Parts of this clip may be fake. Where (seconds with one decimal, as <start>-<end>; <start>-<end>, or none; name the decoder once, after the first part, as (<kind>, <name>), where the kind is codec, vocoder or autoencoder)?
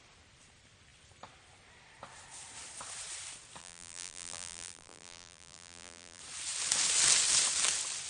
3.6-6.2 (vocoder, BigVGAN v2)